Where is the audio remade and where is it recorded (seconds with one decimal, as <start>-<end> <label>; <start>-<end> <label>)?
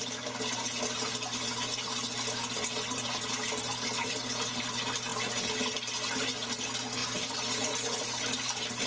0.0-8.9 recorded